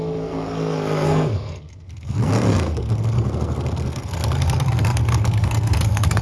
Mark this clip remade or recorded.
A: remade